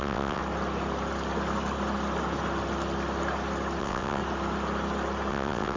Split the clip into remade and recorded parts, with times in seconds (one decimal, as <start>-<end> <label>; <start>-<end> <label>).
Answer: 0.0-0.4 remade; 0.4-3.8 recorded; 3.8-4.2 remade; 4.2-5.3 recorded; 5.3-5.8 remade